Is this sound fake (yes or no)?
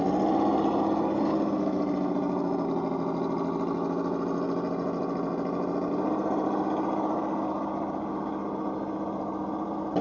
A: no